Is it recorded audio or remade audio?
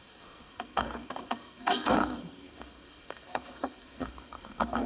remade